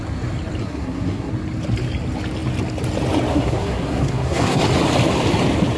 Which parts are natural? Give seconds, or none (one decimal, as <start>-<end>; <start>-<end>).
0.0-0.6; 1.3-3.3; 4.6-5.8